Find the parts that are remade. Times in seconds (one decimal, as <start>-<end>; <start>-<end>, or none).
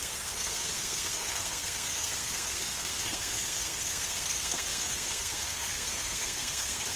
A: 0.0-7.0